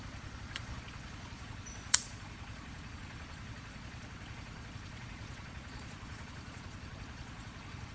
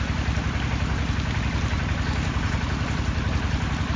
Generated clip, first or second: first